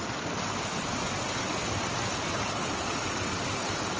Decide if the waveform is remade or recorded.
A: recorded